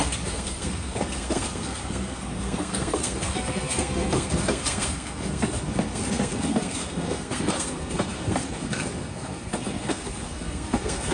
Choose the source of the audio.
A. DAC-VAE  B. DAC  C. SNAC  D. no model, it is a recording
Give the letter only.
C